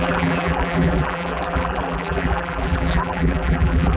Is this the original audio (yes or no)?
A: no